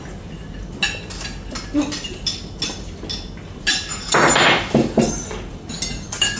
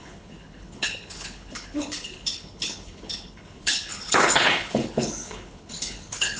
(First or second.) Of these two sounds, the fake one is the second